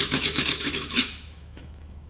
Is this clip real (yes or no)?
no